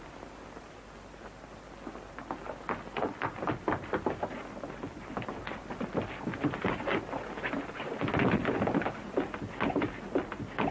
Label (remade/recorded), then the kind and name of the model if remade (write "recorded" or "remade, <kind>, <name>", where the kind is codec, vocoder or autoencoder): recorded